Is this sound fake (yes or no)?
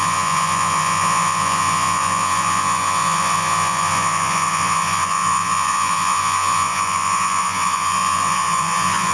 yes